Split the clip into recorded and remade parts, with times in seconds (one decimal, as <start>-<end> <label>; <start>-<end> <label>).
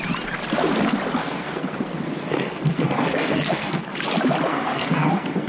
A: 0.0-1.2 recorded; 1.2-3.8 remade; 3.8-4.5 recorded; 4.5-5.5 remade